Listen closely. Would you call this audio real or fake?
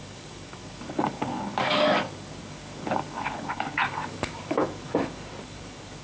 fake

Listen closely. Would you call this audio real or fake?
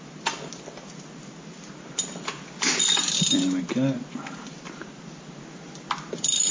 real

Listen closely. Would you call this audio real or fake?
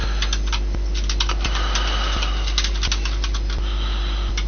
real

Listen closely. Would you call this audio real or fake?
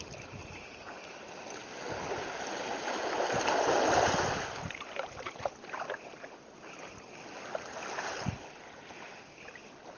real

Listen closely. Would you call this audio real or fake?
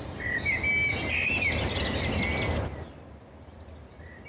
real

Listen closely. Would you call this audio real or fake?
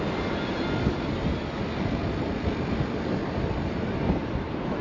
real